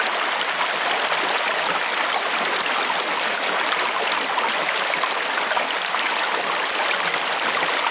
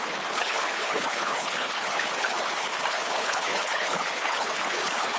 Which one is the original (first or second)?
first